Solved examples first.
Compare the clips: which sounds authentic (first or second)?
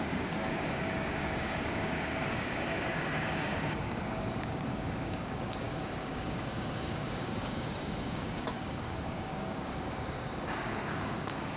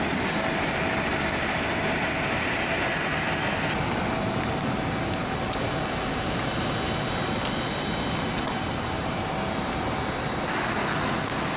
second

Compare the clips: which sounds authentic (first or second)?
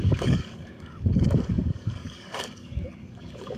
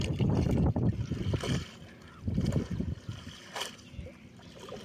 second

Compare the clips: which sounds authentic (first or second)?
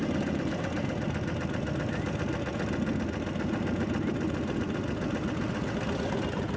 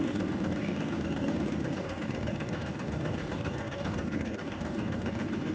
first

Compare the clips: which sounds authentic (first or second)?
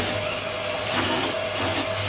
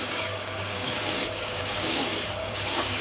first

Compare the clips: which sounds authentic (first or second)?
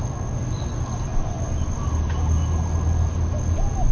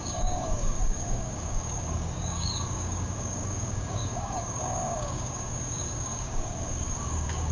first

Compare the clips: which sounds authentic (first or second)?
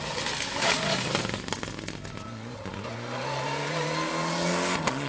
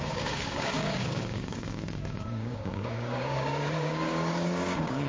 first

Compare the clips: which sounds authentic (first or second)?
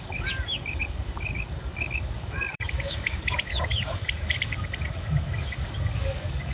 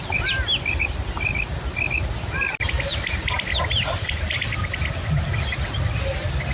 second